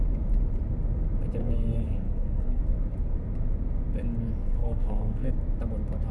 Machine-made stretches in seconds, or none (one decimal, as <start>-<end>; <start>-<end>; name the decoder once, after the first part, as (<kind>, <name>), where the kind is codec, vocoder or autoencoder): 1.4-2.6 (codec, SNAC); 4.4-5.3